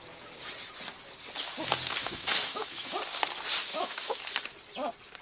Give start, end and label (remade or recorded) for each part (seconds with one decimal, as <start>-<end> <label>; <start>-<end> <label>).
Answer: 0.0-2.0 recorded; 2.0-2.9 remade; 2.9-3.7 recorded; 3.7-4.2 remade; 4.2-5.2 recorded